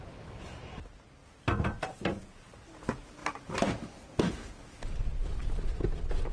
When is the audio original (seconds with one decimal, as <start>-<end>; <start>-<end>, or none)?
0.0-1.2; 1.8-3.2; 5.8-6.3